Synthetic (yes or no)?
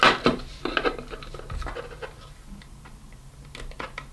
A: no